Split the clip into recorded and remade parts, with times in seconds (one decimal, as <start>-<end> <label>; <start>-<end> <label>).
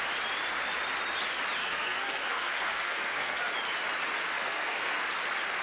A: 0.0-1.6 recorded; 1.6-3.4 remade; 3.4-4.4 recorded; 4.4-5.0 remade; 5.0-5.6 recorded